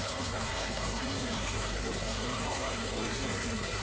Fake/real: fake